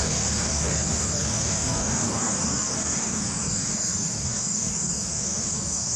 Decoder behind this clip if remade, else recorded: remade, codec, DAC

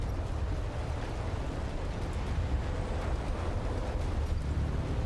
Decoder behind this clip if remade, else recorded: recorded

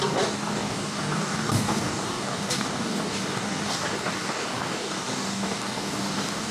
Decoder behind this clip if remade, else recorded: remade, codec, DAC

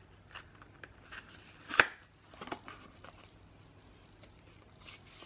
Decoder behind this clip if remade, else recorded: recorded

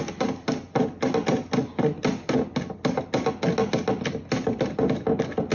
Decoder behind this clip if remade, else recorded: recorded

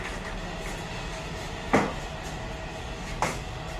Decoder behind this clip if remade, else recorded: recorded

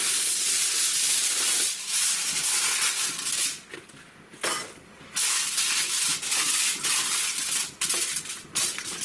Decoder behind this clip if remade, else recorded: recorded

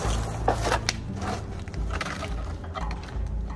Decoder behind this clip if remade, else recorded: recorded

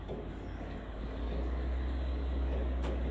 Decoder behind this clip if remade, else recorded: remade, codec, DAC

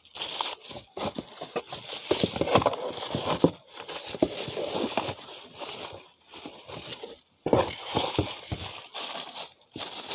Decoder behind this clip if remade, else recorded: recorded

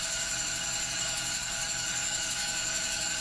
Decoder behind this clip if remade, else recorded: remade, codec, DAC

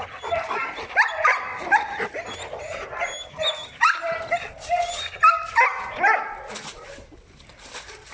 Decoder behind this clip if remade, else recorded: recorded